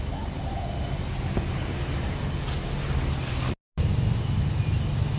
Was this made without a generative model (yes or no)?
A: yes